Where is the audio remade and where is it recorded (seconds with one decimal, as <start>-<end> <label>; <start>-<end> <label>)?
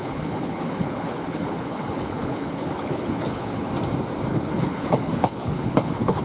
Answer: 0.0-3.7 remade; 3.7-4.3 recorded; 4.3-6.2 remade